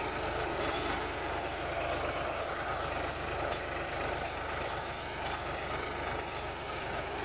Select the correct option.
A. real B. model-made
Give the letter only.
A